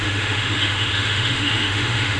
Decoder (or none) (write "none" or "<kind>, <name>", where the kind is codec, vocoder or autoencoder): autoencoder, DAC-VAE